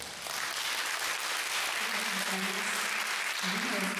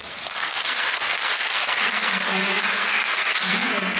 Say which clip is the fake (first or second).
second